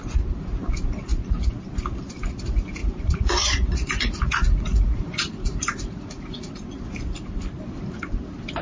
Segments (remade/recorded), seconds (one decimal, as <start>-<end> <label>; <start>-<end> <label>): 0.0-2.8 recorded; 2.8-6.5 remade; 6.5-8.6 recorded